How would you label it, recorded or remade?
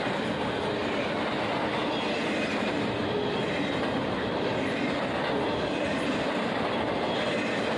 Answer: recorded